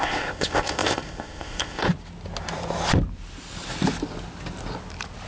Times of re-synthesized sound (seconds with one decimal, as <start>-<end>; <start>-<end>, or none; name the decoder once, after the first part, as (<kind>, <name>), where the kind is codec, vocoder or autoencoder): 0.0-1.9 (codec, ZipCodec)